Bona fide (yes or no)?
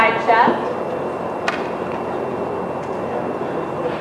yes